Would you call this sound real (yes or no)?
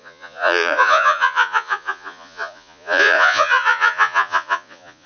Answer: no